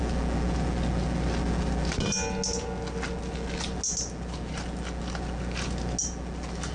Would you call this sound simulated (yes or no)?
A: no